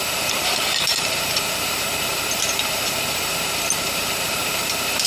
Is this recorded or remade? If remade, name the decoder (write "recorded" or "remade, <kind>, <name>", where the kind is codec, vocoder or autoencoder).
remade, vocoder, BigVGAN v2